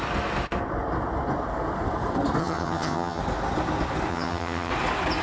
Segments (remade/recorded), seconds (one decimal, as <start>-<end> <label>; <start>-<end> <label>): 0.0-2.4 recorded; 2.4-3.2 remade; 3.2-4.1 recorded; 4.1-4.7 remade; 4.7-5.2 recorded